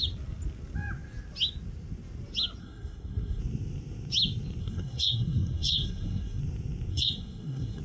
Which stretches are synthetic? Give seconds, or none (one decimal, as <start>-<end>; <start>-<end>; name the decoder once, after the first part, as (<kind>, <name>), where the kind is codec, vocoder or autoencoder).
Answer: 2.6-3.4 (codec, SNAC); 4.6-6.4; 6.9-7.8

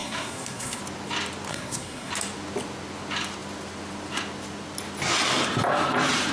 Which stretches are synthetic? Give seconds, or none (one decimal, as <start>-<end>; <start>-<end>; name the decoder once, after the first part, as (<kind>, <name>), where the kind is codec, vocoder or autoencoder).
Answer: 0.0-0.8 (codec, SNAC); 1.5-2.1

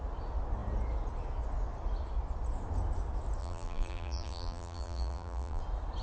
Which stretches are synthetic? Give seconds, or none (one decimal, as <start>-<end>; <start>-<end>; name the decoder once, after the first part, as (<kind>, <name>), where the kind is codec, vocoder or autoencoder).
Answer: 3.4-5.6 (vocoder, BigVGAN v2)

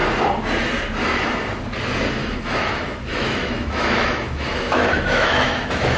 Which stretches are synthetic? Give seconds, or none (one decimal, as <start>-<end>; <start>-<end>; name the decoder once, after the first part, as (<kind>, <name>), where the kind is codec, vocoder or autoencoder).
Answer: 2.2-6.0 (autoencoder, DAC-VAE)